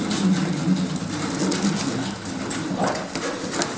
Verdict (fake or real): real